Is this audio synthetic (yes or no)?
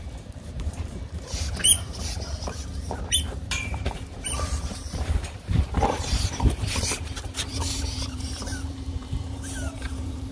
yes